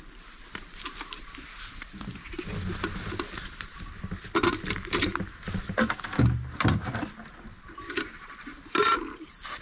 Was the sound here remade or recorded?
recorded